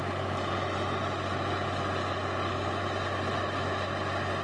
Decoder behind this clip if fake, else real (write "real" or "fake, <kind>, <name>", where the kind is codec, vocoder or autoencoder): real